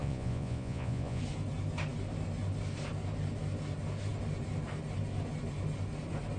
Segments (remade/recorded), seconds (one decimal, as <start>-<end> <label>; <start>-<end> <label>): 0.0-1.2 remade; 1.2-6.4 recorded